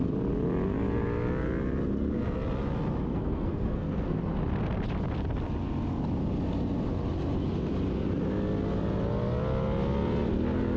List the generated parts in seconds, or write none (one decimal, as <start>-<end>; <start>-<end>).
3.1-4.2

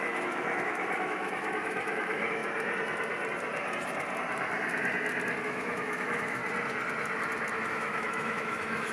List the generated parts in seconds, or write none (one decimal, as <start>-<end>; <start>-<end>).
0.0-2.4; 5.4-6.4; 7.7-8.9

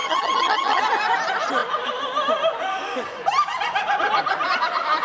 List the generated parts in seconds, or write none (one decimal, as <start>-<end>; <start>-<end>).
0.0-0.8

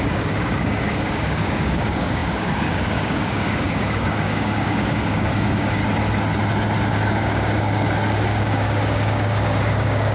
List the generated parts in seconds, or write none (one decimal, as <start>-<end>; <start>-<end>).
0.0-5.8; 6.9-10.1

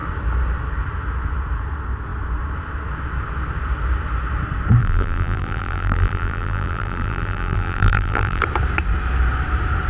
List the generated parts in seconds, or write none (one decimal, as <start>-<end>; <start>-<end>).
4.8-8.4